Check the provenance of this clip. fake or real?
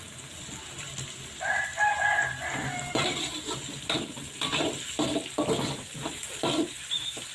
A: real